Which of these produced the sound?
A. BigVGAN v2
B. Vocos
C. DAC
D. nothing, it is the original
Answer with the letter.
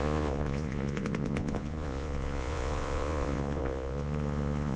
B